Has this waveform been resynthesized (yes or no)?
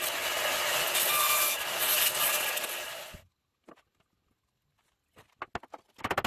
no